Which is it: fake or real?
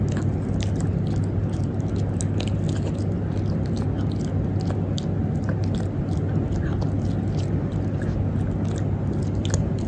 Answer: real